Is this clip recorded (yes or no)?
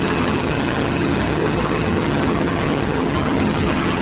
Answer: no